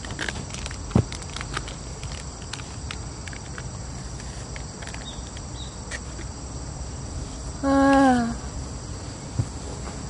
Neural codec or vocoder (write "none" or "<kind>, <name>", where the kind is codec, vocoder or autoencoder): none